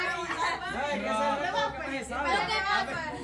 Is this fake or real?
real